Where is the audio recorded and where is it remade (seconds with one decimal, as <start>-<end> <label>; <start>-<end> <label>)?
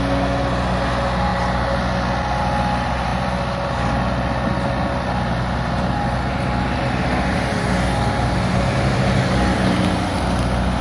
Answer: 0.0-10.8 recorded